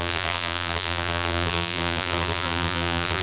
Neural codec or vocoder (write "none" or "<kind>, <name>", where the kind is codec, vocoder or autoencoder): vocoder, BigVGAN v2